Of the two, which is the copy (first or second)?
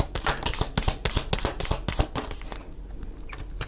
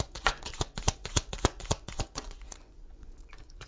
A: second